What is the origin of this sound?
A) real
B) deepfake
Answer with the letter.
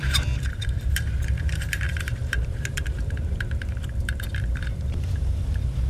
B